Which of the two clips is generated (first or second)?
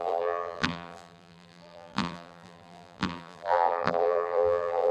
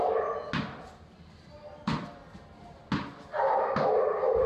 first